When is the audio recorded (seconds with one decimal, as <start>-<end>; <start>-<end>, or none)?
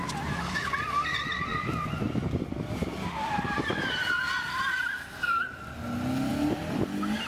0.0-1.5; 2.7-6.3